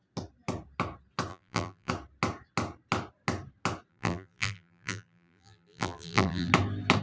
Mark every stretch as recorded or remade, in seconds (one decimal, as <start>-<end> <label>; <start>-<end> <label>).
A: 0.0-1.3 recorded; 1.3-1.9 remade; 1.9-3.9 recorded; 3.9-6.5 remade; 6.5-7.0 recorded